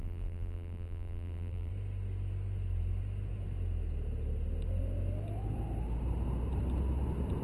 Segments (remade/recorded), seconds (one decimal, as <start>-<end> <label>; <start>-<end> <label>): 0.0-1.7 remade; 1.7-7.4 recorded